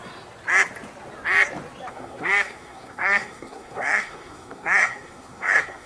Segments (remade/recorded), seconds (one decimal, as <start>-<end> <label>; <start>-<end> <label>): 0.0-1.9 recorded; 1.9-5.9 remade